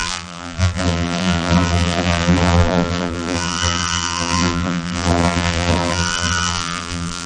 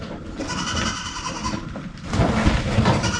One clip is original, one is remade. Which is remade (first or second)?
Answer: first